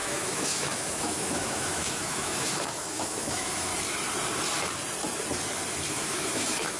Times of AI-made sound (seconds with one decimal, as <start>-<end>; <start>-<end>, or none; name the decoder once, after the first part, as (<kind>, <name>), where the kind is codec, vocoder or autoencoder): 0.0-3.7 (autoencoder, DAC-VAE); 5.9-6.8

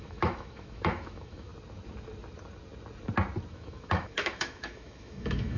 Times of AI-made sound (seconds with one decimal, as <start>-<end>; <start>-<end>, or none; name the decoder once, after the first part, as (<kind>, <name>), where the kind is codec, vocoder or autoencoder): 0.0-1.5 (autoencoder, DAC-VAE); 3.5-5.6